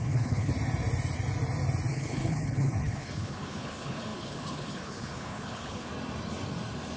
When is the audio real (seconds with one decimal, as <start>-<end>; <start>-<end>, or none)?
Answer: 0.5-1.9; 5.9-7.0